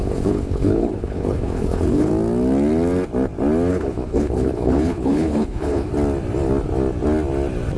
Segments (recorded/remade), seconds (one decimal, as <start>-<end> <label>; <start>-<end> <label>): 0.0-2.1 remade; 2.1-3.7 recorded; 3.7-5.9 remade; 5.9-7.8 recorded